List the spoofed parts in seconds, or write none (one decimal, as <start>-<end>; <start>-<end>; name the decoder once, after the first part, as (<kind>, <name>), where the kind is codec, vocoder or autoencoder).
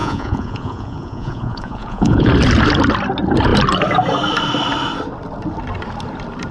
0.0-2.3 (vocoder, Vocos)